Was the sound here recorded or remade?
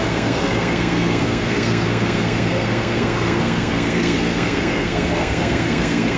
remade